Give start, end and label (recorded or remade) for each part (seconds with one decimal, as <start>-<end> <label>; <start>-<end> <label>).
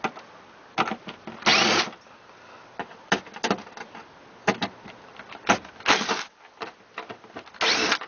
0.0-8.1 recorded